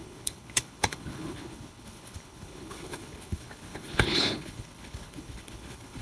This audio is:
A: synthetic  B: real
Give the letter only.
A